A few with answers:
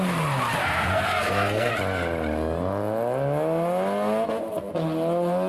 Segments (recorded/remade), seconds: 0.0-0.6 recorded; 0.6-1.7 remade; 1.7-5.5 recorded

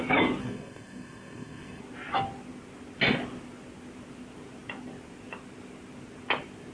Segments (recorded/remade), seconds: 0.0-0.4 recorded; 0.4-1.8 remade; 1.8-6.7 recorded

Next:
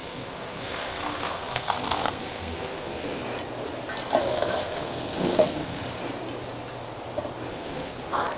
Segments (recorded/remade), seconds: 0.0-3.2 remade; 3.2-4.2 recorded; 4.2-5.8 remade; 5.8-7.5 recorded; 7.5-8.4 remade